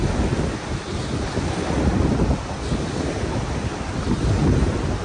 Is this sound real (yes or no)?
yes